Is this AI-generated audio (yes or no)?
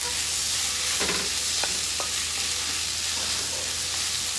no